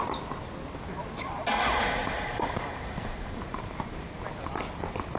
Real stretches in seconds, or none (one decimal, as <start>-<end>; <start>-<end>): 0.0-2.0; 4.2-5.2